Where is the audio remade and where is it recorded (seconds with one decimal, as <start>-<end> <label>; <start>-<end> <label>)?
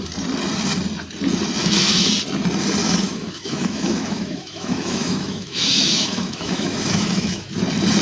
0.0-1.6 recorded; 1.6-2.1 remade; 2.1-2.8 recorded; 2.8-7.5 remade; 7.5-8.0 recorded